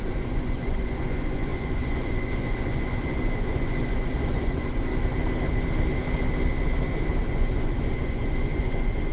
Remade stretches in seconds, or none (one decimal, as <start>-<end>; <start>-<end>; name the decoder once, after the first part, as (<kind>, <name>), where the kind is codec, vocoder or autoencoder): 0.0-4.9 (vocoder, Vocos); 7.2-9.1